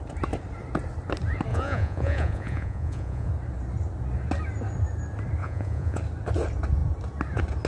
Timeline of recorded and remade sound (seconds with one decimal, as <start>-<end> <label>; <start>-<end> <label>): 0.0-1.5 recorded; 1.5-3.3 remade; 3.3-5.4 recorded; 5.4-6.0 remade; 6.0-7.7 recorded